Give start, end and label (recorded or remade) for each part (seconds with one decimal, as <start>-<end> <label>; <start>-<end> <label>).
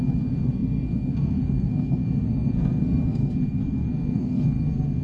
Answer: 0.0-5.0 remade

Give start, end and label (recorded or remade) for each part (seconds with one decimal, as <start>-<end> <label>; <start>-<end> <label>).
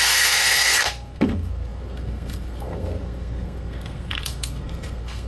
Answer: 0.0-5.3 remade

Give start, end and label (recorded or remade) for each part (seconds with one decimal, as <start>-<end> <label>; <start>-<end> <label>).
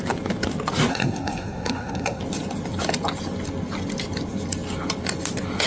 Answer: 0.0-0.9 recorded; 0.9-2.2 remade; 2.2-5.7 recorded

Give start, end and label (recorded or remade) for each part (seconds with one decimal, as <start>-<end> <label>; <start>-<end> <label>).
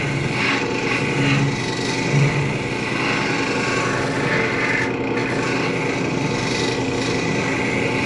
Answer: 0.0-8.1 recorded